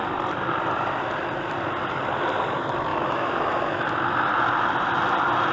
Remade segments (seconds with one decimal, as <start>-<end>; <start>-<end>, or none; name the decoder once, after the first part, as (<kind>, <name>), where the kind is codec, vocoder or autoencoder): 2.9-3.6 (autoencoder, DAC-VAE)